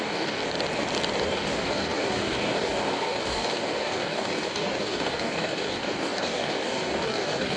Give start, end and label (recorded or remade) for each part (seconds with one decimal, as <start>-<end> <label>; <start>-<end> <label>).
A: 0.0-0.4 remade; 0.4-1.2 recorded; 1.2-7.6 remade